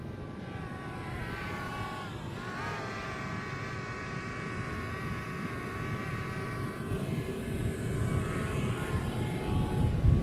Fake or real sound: real